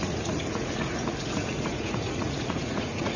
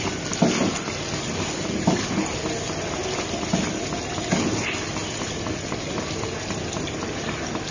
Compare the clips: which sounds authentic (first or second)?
second